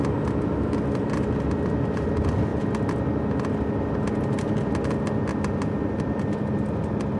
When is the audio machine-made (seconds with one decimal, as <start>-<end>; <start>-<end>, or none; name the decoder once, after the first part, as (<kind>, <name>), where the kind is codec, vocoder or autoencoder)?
none